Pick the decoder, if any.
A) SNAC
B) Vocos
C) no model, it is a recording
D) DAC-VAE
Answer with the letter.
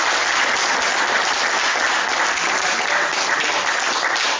C